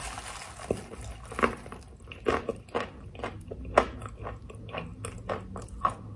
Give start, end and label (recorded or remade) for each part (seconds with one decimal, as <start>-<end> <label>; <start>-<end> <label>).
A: 0.0-6.2 recorded